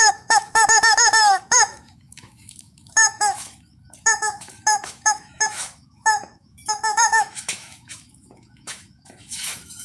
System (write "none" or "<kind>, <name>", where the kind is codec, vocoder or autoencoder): autoencoder, DAC-VAE